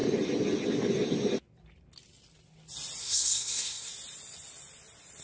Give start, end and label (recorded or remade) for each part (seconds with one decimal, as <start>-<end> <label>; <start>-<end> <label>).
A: 0.0-3.0 recorded; 3.0-3.9 remade; 3.9-5.2 recorded